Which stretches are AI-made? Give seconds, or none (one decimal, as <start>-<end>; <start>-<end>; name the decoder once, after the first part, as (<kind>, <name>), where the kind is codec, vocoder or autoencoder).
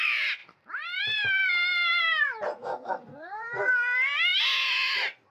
2.6-3.7 (codec, SNAC)